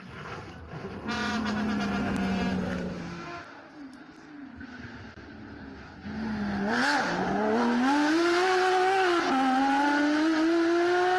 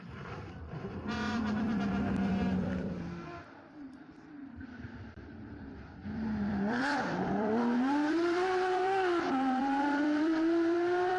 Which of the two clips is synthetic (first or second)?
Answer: second